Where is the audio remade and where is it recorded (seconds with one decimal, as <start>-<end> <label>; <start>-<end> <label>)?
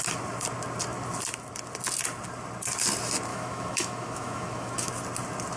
0.0-3.3 recorded; 3.3-4.9 remade; 4.9-5.6 recorded